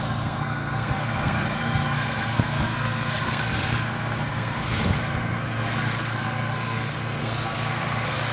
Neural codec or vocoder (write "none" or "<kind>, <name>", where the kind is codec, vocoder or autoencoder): codec, SNAC